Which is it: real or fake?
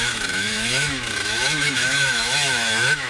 fake